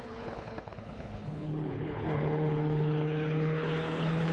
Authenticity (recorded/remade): remade